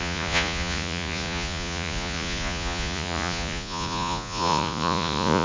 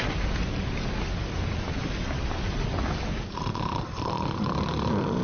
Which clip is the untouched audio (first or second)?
second